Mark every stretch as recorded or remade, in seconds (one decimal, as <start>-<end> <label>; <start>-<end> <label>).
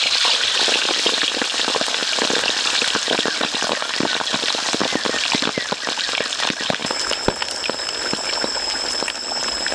0.0-9.7 recorded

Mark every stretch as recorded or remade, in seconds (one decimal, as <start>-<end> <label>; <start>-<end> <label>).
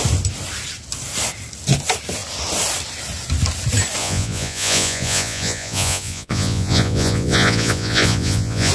0.0-4.0 recorded; 4.0-8.7 remade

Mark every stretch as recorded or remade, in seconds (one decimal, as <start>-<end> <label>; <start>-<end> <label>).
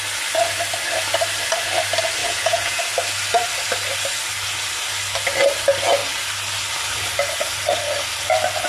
0.0-2.2 recorded; 2.2-2.8 remade; 2.8-8.7 recorded